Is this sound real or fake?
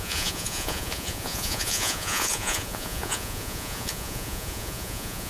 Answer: fake